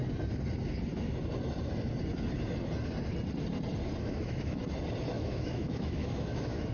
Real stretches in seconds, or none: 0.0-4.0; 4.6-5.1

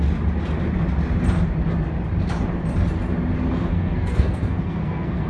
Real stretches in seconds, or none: 0.0-3.6